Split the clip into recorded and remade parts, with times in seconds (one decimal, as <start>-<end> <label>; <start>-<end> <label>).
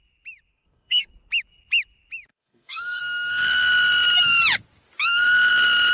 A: 0.0-0.5 recorded; 0.5-1.1 remade; 1.1-2.3 recorded; 2.3-3.0 remade; 3.0-5.9 recorded